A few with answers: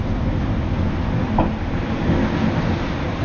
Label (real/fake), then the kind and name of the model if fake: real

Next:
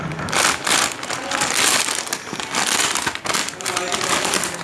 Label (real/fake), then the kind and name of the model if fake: real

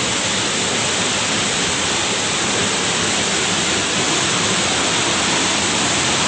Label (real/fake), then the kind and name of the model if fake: real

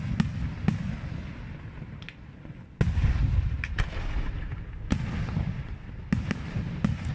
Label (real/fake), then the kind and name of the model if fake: real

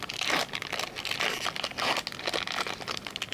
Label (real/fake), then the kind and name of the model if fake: real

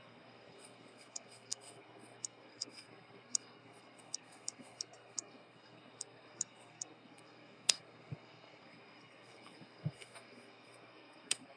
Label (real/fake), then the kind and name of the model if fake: fake, codec, SNAC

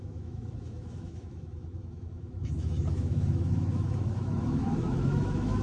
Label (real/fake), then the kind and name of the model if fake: fake, autoencoder, DAC-VAE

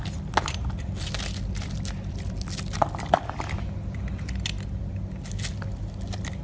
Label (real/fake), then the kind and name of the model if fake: real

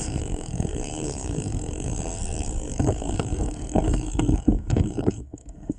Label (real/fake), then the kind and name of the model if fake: fake, codec, SNAC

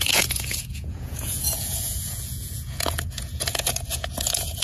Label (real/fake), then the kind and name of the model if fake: fake, vocoder, Vocos